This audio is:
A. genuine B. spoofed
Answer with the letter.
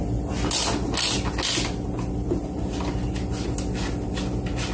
A